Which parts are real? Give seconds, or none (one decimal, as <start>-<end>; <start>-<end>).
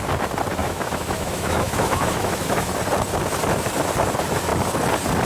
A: 0.0-0.6; 2.7-5.3